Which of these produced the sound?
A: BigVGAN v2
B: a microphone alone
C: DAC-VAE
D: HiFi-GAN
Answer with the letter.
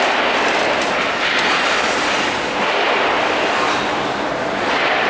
B